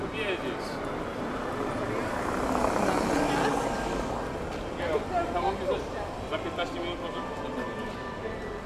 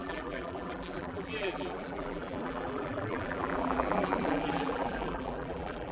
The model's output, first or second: second